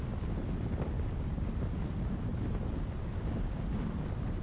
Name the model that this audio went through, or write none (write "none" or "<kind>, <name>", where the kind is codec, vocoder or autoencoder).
none